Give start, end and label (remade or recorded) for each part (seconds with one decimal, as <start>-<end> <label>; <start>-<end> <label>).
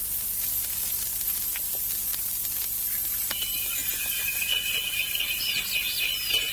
0.0-1.4 remade; 1.4-3.8 recorded; 3.8-5.7 remade; 5.7-6.5 recorded